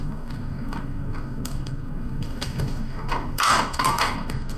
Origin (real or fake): fake